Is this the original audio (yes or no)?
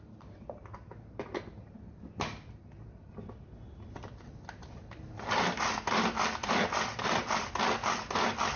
yes